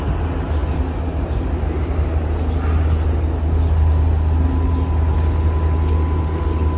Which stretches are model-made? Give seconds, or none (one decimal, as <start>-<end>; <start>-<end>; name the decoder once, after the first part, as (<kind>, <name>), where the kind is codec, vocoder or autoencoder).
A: none

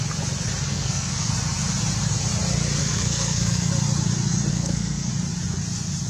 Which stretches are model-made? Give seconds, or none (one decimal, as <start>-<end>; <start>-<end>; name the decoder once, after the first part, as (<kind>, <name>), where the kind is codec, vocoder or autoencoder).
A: 0.7-1.3 (codec, SNAC); 2.8-3.7; 4.5-5.1